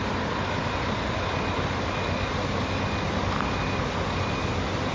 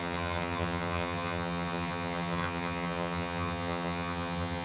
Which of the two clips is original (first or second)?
first